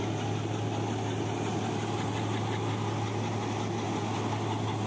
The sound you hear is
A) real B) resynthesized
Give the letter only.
A